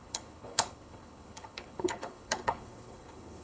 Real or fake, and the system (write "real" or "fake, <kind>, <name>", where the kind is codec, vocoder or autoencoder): fake, codec, HILCodec